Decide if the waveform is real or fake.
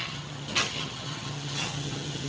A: fake